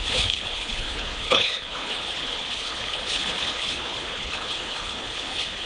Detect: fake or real fake